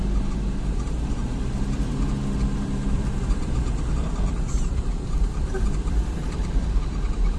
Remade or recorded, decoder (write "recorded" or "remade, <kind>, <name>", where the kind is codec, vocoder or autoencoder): remade, vocoder, BigVGAN v2